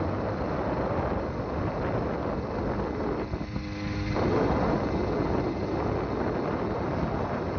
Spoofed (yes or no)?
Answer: no